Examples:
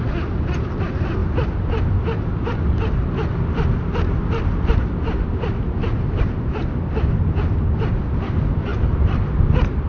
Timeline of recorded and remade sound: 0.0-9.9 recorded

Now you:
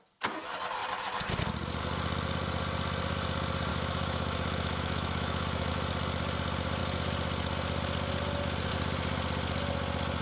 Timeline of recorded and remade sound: 0.0-3.7 recorded; 3.7-5.7 remade; 5.7-10.2 recorded